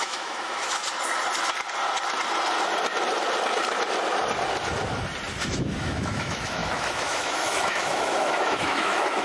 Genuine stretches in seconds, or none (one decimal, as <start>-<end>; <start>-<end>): 0.8-5.4